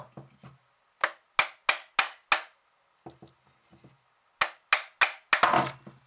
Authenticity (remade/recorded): recorded